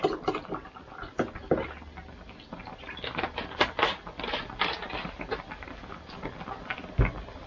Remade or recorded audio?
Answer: recorded